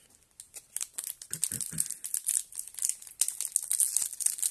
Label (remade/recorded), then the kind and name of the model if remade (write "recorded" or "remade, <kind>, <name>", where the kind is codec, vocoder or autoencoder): recorded